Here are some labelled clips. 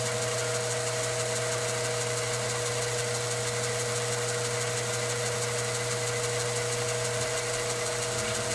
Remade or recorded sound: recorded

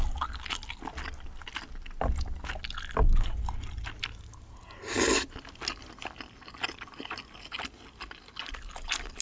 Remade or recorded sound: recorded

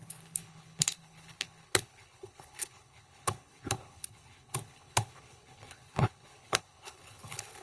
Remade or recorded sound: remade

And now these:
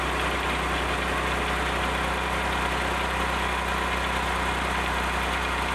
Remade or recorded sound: recorded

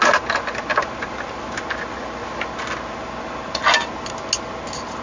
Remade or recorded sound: recorded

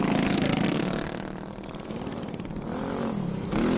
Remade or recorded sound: recorded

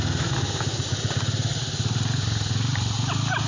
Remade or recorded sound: recorded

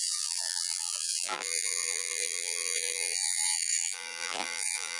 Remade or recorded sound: remade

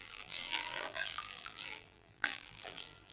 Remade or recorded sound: remade